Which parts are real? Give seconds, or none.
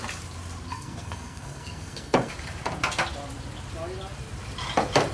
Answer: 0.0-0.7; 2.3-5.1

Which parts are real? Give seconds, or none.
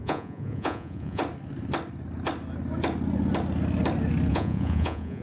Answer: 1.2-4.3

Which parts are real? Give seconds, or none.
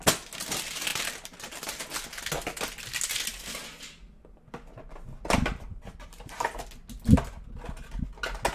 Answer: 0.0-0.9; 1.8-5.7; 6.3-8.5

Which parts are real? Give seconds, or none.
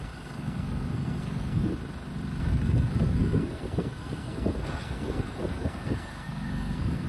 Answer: 1.7-2.4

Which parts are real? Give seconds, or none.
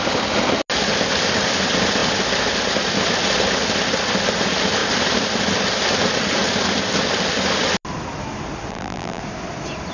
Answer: 0.0-8.7; 9.2-9.9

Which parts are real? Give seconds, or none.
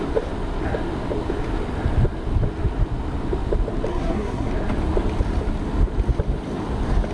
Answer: 0.0-3.9; 4.5-7.1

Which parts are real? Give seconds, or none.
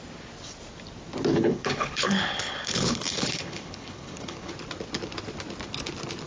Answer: 0.0-1.3; 4.5-6.3